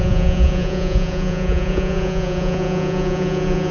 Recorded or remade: remade